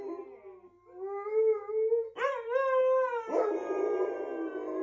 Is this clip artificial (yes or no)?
no